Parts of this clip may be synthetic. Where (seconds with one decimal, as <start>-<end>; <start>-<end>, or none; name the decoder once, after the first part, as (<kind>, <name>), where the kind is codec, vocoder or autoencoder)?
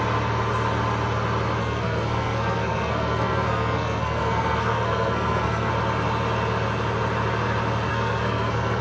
1.6-5.7 (codec, SNAC); 7.9-8.8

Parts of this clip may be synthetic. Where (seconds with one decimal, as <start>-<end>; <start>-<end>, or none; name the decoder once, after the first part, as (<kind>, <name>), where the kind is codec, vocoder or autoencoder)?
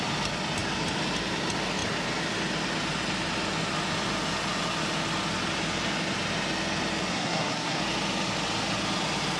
7.1-7.8 (codec, SNAC)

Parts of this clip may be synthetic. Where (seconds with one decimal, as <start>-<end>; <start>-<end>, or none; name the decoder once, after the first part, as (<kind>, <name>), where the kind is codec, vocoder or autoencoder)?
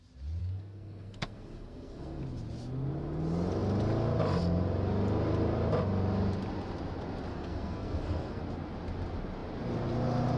0.4-2.2 (codec, SNAC); 7.3-8.4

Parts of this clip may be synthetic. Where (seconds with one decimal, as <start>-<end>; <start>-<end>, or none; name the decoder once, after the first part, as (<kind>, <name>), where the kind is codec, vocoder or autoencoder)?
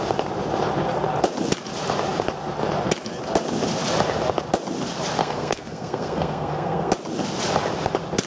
5.2-6.9 (codec, SNAC)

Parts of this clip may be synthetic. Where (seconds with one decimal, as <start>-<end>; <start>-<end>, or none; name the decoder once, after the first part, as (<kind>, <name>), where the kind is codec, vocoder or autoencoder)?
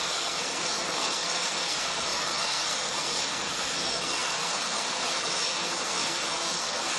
0.0-7.0 (codec, SNAC)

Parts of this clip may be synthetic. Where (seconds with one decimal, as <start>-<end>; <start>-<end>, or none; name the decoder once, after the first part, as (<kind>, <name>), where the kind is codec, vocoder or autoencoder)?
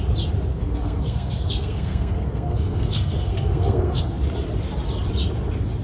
0.5-4.0 (codec, SNAC)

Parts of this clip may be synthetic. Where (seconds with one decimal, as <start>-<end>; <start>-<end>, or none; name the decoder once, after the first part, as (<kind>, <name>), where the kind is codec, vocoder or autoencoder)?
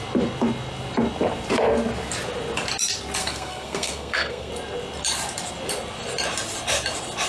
3.2-4.5 (codec, SNAC)